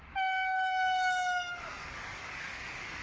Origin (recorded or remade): remade